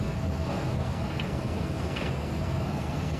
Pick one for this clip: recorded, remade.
remade